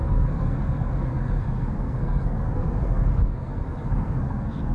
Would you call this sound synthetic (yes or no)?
yes